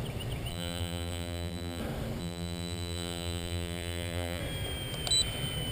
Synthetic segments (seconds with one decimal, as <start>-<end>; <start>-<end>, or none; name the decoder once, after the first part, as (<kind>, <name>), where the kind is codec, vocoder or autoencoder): 0.5-1.8 (vocoder, BigVGAN v2); 2.2-4.4